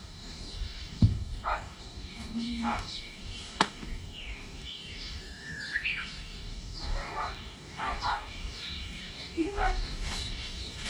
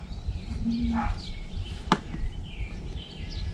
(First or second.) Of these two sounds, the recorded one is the second